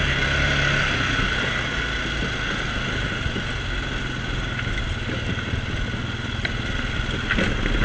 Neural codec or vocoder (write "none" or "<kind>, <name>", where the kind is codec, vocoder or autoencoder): none